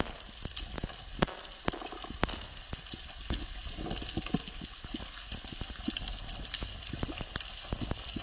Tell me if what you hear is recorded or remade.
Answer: recorded